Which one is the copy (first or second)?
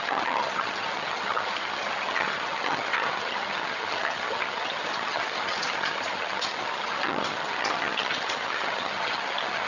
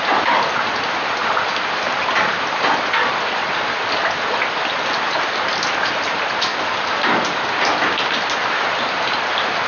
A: first